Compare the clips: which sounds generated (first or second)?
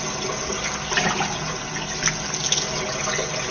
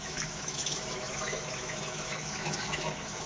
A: second